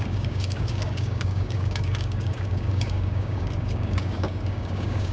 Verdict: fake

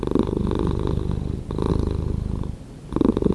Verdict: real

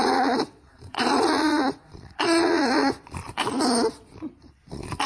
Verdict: fake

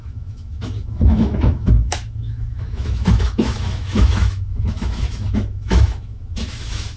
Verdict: fake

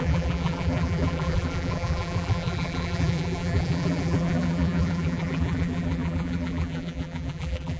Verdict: fake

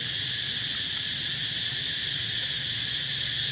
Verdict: real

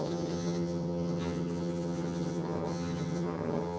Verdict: fake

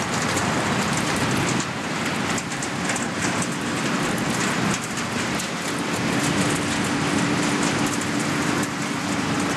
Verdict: real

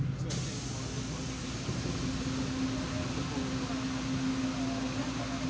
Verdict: real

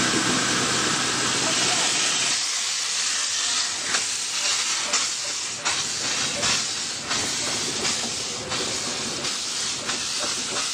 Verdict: real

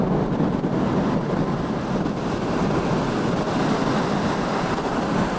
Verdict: real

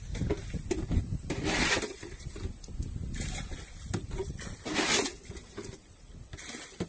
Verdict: real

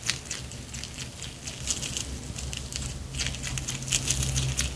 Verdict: real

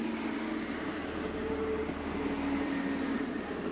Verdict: real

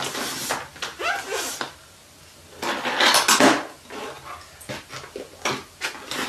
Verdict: real